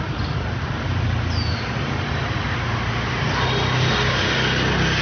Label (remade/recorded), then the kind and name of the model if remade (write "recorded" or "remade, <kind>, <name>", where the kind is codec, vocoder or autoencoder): recorded